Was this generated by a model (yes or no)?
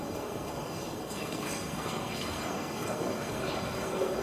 yes